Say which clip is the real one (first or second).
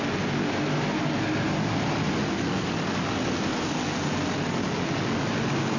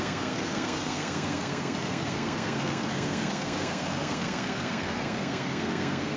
first